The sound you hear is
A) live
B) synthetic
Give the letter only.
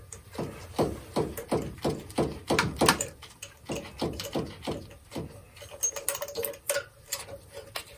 A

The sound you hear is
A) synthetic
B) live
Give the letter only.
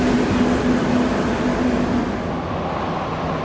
B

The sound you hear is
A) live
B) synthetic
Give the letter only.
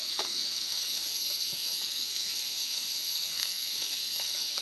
B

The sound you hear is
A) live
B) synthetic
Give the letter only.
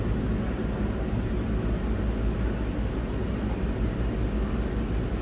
A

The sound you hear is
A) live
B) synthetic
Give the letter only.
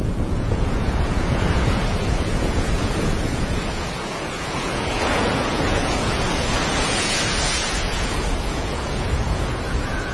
B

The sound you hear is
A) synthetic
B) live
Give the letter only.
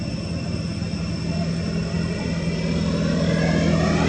B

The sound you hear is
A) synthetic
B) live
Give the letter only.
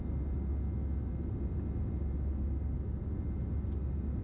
B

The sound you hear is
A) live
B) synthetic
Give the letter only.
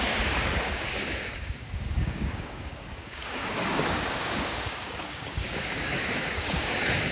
B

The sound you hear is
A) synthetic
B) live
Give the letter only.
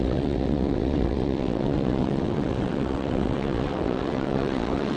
A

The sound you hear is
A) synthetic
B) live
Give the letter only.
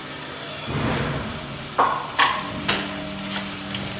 B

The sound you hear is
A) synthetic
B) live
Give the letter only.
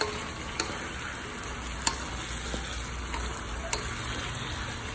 B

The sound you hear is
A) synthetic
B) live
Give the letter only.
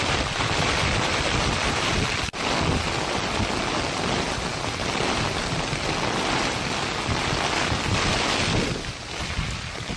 B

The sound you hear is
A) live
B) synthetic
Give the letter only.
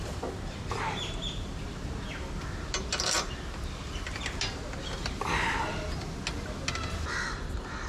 A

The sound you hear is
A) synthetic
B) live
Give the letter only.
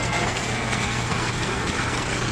A